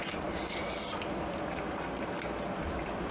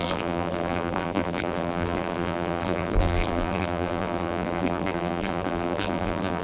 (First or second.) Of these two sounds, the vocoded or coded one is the second